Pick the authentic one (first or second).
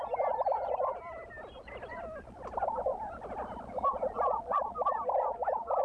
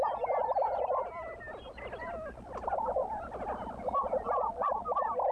second